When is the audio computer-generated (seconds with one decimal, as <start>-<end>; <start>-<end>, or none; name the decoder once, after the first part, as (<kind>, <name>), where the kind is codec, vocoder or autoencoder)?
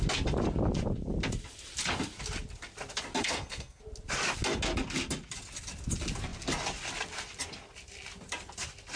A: 3.2-3.8 (codec, SNAC)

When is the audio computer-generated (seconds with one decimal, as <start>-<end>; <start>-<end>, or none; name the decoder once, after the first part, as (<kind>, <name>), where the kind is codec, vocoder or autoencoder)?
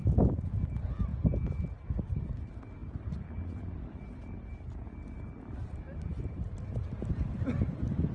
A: 0.5-1.1 (vocoder, BigVGAN v2); 2.2-8.1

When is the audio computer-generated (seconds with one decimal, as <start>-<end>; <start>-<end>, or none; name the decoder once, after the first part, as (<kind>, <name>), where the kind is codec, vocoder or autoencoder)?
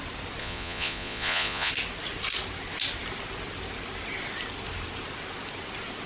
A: 0.4-1.7 (vocoder, Vocos)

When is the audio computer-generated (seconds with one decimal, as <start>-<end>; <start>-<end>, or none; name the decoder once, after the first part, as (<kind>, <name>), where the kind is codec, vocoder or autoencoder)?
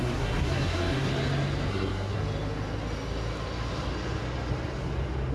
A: 0.0-1.1 (codec, SNAC); 1.7-2.2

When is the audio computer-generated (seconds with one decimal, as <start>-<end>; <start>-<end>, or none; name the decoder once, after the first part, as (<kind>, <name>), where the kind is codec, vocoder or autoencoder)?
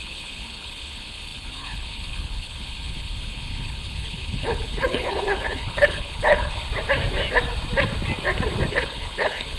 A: 0.0-6.6 (codec, HILCodec); 8.7-9.6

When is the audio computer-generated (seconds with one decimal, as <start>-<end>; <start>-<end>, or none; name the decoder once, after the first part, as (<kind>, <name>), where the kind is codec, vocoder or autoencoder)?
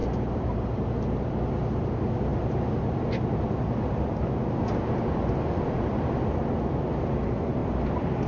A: 0.0-0.5 (vocoder, BigVGAN v2); 2.3-3.0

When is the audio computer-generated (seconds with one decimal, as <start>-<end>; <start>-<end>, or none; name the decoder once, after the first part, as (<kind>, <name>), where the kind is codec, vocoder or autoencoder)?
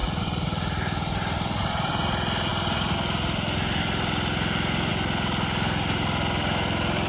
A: 0.0-1.9 (vocoder, BigVGAN v2)